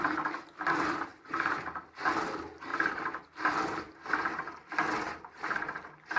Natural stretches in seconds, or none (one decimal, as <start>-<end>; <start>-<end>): 0.0-1.1; 2.1-2.7; 4.1-6.2